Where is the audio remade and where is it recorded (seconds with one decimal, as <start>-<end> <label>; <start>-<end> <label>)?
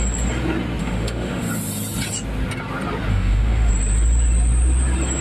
0.0-0.8 recorded; 0.8-1.5 remade; 1.5-3.1 recorded; 3.1-3.7 remade; 3.7-5.2 recorded